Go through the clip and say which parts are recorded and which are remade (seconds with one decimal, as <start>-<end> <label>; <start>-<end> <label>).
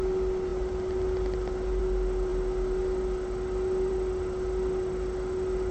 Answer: 0.0-5.7 recorded